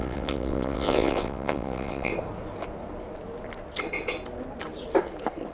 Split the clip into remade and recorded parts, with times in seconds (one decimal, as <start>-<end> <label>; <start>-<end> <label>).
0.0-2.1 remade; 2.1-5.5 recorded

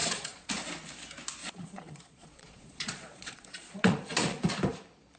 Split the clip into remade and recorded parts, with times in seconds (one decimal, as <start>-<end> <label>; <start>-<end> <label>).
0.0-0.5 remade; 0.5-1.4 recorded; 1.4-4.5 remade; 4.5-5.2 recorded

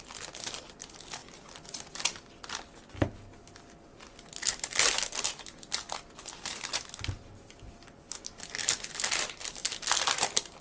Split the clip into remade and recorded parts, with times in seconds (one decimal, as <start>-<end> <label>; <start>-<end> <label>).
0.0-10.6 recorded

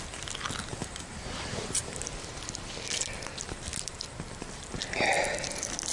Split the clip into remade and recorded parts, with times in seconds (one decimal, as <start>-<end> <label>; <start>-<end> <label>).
0.0-0.8 recorded; 0.8-2.1 remade; 2.1-5.9 recorded

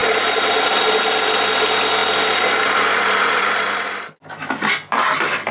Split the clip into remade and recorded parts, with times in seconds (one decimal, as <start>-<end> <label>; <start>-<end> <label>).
0.0-5.5 recorded

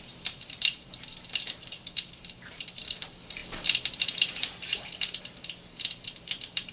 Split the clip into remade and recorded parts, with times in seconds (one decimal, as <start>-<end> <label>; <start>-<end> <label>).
0.0-6.7 remade

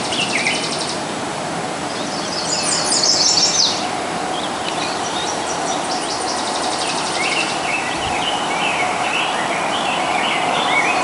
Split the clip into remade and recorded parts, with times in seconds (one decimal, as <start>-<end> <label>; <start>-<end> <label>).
0.0-9.1 remade; 9.1-9.7 recorded; 9.7-11.0 remade